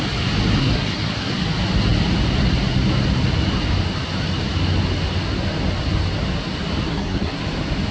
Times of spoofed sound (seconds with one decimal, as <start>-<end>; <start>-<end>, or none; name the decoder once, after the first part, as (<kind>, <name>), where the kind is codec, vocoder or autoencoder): 0.6-1.3 (codec, SNAC); 6.9-7.4